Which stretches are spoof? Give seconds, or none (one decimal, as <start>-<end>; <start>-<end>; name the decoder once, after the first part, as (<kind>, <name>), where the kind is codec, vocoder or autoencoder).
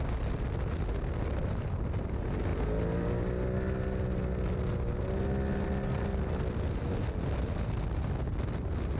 none